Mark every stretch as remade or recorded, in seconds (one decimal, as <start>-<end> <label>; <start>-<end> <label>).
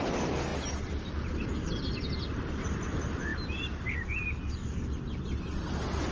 0.0-6.1 recorded